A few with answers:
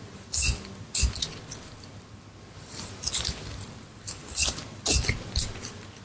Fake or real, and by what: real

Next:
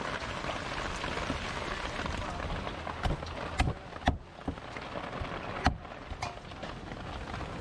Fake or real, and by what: real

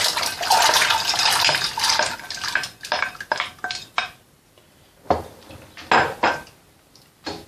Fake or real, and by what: real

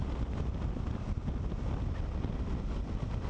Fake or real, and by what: real